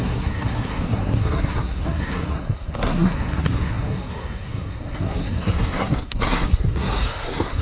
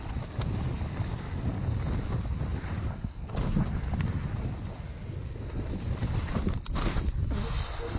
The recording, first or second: second